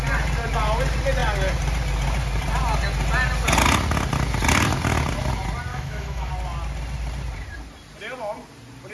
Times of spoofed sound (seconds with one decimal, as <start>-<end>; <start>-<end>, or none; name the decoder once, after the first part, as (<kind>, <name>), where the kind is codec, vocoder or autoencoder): 5.7-6.3 (autoencoder, DAC-VAE)